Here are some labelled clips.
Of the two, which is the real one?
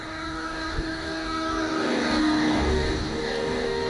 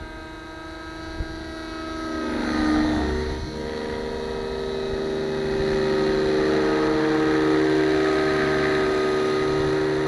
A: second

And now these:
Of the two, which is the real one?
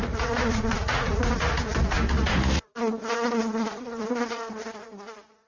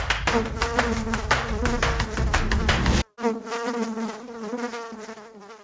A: second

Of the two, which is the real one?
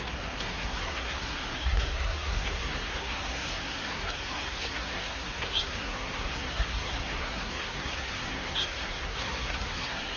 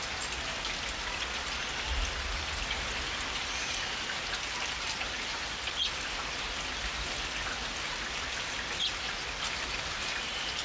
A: second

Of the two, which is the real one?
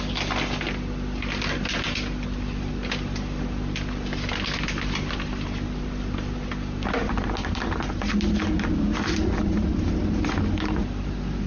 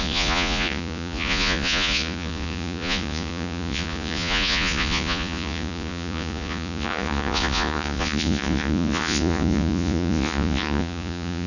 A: first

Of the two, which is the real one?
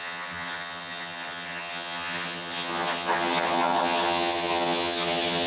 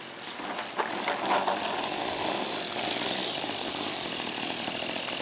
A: second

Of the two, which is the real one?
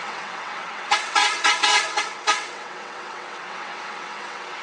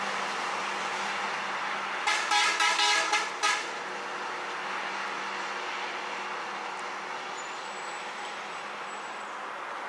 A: second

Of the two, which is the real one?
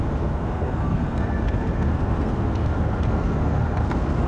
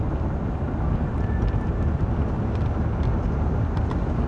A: second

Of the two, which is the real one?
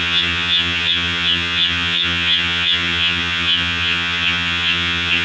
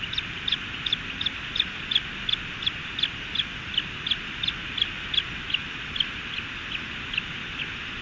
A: second